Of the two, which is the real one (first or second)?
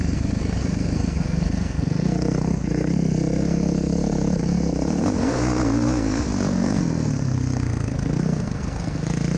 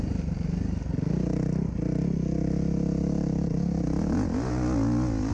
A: second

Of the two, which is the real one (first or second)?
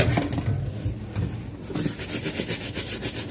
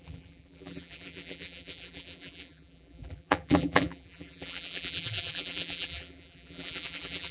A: first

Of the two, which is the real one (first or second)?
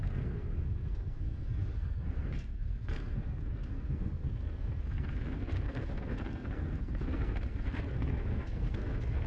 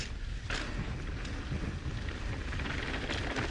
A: second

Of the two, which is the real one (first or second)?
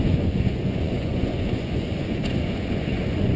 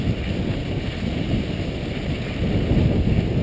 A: second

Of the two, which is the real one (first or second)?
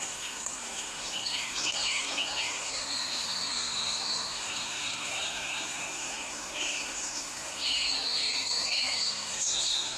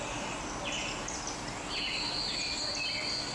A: second